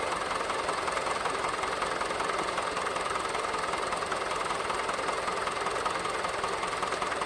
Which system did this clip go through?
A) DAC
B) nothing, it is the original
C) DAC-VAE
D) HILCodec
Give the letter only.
B